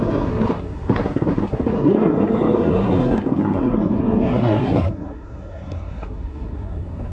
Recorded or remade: remade